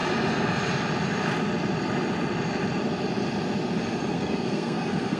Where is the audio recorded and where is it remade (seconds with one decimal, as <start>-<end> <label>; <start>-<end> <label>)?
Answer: 0.0-4.1 recorded; 4.1-5.2 remade